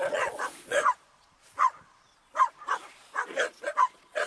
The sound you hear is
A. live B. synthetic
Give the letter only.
B